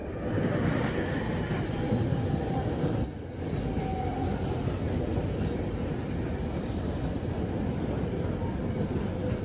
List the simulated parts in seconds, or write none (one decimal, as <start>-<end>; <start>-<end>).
none